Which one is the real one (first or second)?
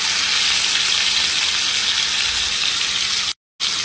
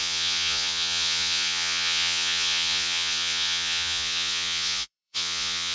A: first